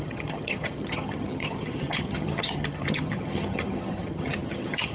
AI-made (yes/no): yes